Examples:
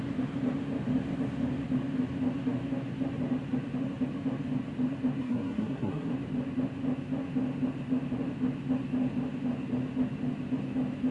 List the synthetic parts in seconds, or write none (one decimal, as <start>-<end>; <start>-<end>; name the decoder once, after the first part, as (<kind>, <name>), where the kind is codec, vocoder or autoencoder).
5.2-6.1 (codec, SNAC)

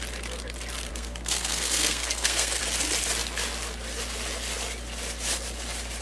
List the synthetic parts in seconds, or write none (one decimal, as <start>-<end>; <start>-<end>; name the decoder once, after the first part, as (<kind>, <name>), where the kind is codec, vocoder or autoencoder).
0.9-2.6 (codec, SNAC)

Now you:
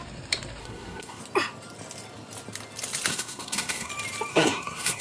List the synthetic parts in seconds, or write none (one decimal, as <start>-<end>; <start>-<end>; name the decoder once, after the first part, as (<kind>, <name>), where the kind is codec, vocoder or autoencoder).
0.6-1.2 (codec, SNAC); 3.1-3.9; 4.3-5.0

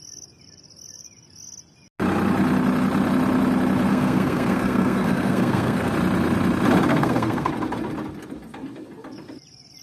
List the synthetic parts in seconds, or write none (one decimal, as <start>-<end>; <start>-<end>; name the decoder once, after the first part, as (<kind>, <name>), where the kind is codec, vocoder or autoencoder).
3.9-5.9 (codec, SNAC); 6.9-7.5

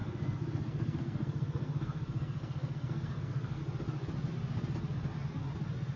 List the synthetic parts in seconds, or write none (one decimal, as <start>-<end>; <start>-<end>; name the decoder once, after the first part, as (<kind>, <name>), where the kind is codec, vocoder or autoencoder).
0.0-3.6 (codec, SNAC)

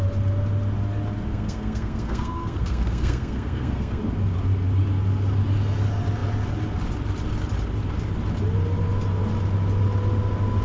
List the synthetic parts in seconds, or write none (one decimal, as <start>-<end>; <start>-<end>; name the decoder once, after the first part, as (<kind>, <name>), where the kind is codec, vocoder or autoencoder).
1.3-4.0 (codec, SNAC)